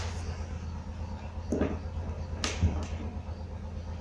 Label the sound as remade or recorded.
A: recorded